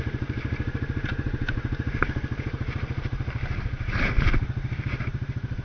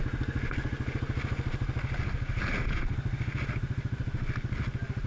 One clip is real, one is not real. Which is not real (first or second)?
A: first